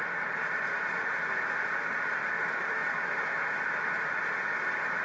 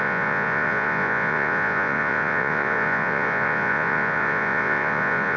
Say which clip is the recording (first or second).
first